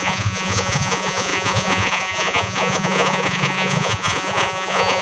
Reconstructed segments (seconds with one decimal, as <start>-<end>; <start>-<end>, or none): 0.0-5.0